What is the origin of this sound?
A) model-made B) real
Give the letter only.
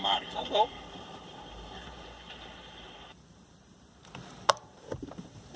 A